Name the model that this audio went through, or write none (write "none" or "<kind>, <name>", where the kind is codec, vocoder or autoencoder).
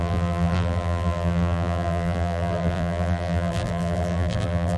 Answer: vocoder, BigVGAN v2